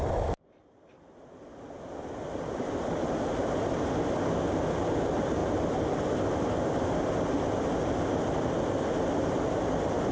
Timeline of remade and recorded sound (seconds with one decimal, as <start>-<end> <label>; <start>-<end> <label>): 0.0-10.1 recorded